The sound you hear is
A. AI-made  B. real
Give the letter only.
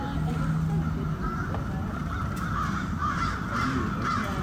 B